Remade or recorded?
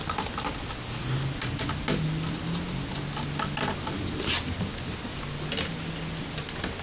recorded